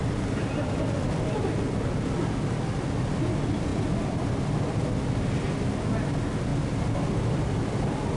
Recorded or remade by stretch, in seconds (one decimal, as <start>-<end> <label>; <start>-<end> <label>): 0.0-1.4 remade; 1.4-3.7 recorded; 3.7-5.2 remade; 5.2-6.5 recorded; 6.5-8.2 remade